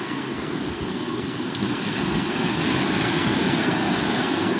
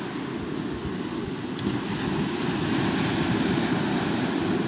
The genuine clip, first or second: second